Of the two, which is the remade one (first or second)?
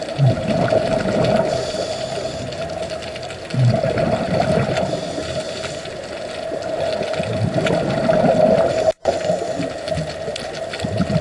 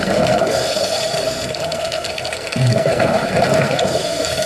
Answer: second